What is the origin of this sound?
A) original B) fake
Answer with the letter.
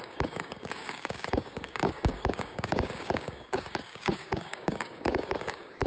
B